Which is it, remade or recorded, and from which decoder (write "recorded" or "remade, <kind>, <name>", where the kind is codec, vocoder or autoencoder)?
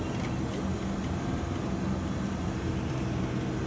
recorded